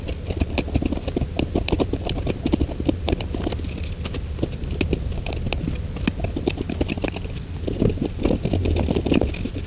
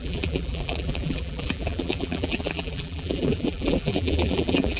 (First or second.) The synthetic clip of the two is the second